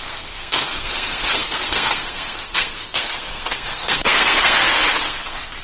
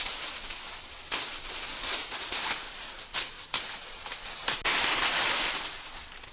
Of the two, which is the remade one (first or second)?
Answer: first